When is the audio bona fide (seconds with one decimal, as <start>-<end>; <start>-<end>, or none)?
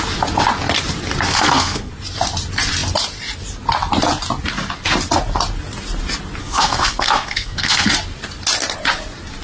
0.0-1.3; 1.9-6.4; 7.9-9.4